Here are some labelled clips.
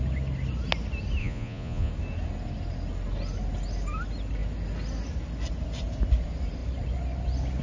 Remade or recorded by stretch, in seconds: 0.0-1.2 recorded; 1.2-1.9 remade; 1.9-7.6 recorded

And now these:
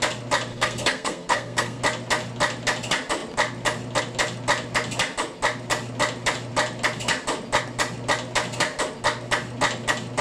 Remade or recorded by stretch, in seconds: 0.0-0.5 recorded; 0.5-1.8 remade; 1.8-10.2 recorded

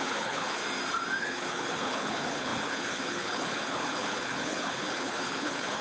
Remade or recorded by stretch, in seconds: 0.0-0.6 remade; 0.6-1.2 recorded; 1.2-5.8 remade